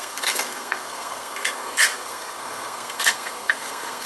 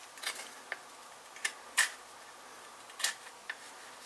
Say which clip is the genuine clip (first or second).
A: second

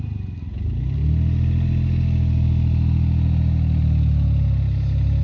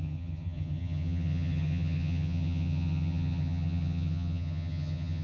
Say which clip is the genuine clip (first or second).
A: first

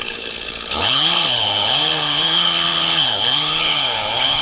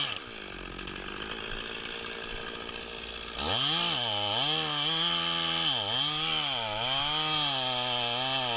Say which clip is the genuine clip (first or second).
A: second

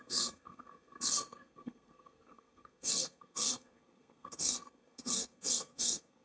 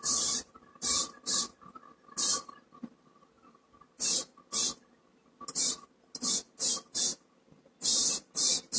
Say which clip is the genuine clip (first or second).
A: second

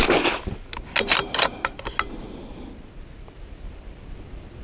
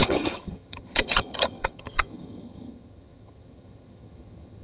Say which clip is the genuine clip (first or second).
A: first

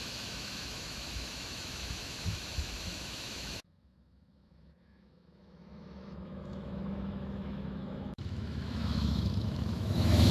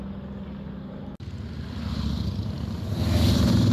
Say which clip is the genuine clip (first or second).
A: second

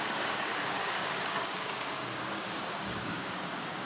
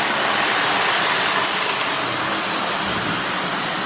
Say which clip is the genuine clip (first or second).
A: second